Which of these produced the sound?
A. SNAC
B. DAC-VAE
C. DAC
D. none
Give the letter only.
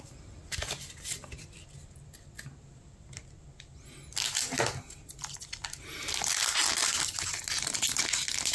D